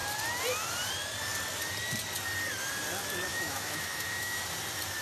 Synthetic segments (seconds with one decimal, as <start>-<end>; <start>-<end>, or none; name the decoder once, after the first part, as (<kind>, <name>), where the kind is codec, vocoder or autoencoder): 3.3-4.4 (autoencoder, DAC-VAE)